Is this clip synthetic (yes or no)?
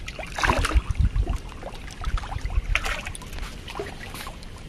no